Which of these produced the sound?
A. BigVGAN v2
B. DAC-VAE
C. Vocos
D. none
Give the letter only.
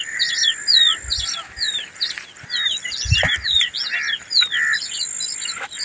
D